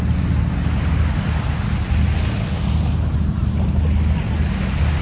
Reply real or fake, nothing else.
real